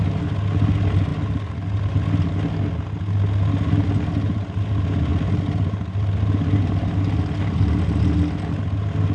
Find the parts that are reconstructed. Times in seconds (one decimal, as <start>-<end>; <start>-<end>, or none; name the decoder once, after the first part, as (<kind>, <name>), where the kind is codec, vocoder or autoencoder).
none